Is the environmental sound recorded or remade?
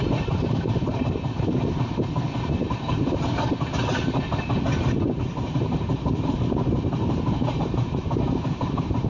remade